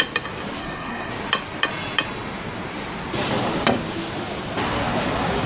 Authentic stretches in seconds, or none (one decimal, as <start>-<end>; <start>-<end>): 0.0-0.6; 1.1-5.5